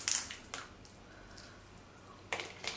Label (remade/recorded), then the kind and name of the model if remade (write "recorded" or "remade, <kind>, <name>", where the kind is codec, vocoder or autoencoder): recorded